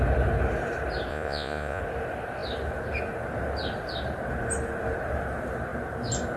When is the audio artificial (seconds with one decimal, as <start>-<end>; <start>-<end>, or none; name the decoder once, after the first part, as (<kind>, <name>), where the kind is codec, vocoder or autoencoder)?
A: 1.1-1.8 (vocoder, Vocos)